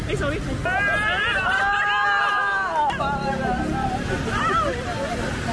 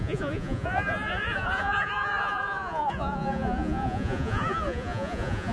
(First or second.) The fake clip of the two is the second